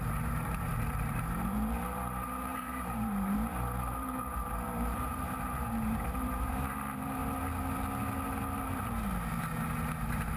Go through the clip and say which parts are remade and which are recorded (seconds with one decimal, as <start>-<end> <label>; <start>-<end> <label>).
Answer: 0.0-7.2 remade; 7.2-9.9 recorded; 9.9-10.4 remade